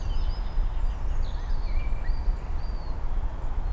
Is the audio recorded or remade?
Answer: recorded